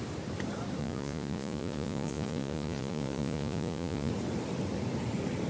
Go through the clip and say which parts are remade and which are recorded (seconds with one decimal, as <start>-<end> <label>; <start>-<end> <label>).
0.0-0.8 recorded; 0.8-4.1 remade; 4.1-5.5 recorded